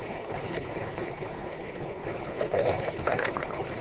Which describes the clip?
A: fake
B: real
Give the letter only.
A